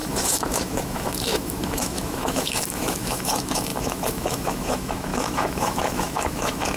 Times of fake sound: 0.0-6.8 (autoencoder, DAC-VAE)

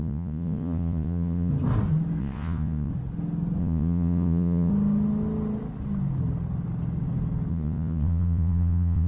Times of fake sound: 0.0-1.5 (vocoder, Vocos); 2.2-2.9; 3.6-4.7; 7.5-9.1

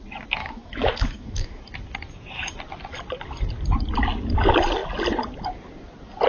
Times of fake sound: 0.4-1.6 (autoencoder, DAC-VAE)

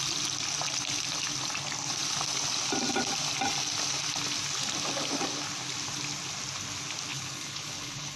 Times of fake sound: 7.1-8.2 (codec, HILCodec)

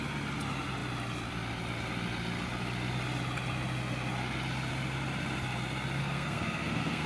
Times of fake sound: 6.0-7.1 (codec, SNAC)

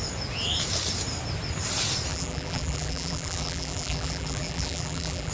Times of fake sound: 2.1-5.3 (vocoder, BigVGAN v2)

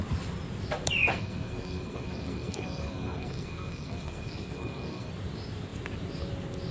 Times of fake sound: 1.1-5.1 (codec, SNAC)